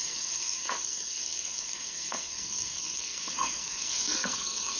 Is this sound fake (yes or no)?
yes